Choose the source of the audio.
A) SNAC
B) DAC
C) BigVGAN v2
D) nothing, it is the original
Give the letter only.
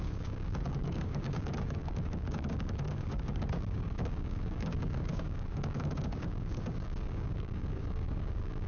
B